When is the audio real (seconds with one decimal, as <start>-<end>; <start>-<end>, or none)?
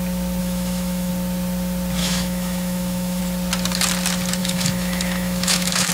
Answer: 0.0-0.4; 1.1-2.0; 3.2-4.4